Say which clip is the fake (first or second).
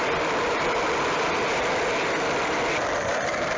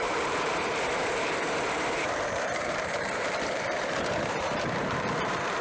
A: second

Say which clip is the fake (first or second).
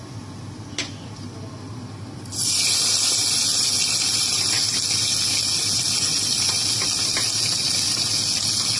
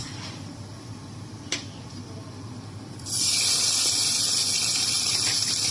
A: second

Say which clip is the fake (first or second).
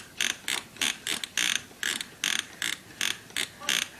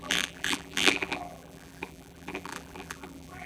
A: second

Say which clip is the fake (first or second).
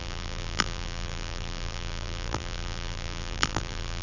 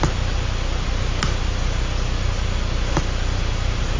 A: first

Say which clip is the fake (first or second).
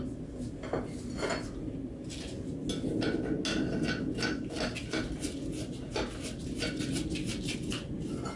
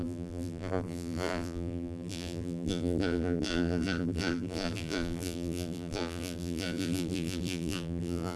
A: second